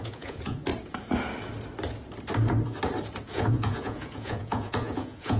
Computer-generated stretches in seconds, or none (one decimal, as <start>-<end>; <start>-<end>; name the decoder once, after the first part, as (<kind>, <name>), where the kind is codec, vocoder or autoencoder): 0.0-0.7 (vocoder, Vocos); 3.2-5.4